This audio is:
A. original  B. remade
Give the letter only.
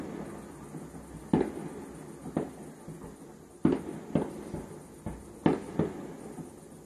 A